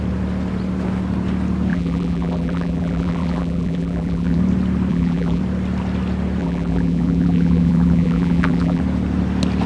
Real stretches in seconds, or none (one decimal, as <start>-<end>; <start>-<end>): 0.0-1.7; 4.4-4.9; 5.4-6.4; 8.8-9.7